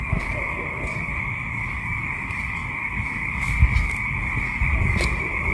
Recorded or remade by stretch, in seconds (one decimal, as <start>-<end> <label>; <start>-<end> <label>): 0.0-1.1 remade; 1.1-1.7 recorded; 1.7-5.5 remade